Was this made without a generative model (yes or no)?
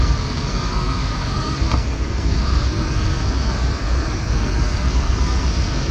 no